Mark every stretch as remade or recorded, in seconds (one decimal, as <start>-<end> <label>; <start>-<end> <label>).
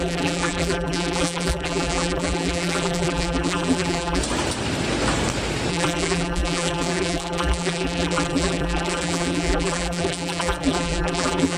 0.0-4.2 remade; 4.2-5.7 recorded; 5.7-11.6 remade